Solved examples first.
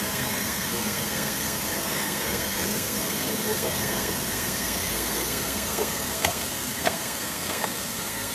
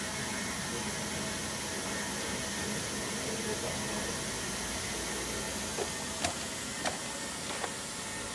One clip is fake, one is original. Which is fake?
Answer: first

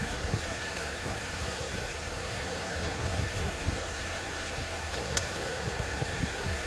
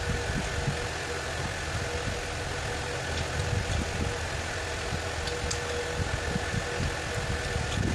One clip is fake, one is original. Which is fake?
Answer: first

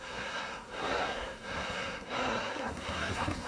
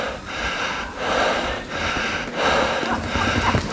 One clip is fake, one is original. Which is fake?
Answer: first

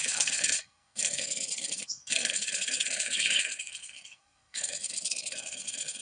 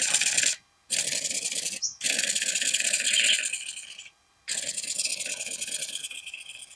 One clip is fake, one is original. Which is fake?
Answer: first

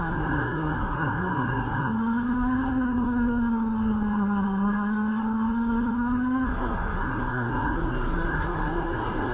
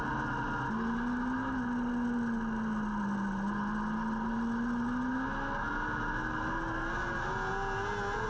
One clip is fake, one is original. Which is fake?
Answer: first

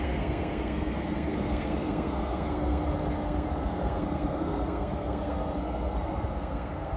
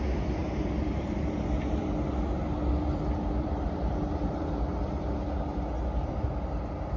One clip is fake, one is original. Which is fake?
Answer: first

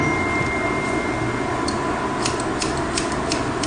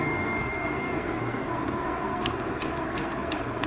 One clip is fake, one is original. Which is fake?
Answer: second